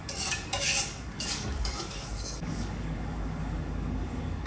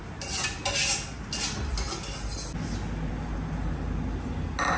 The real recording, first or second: second